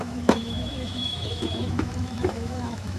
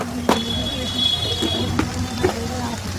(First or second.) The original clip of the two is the second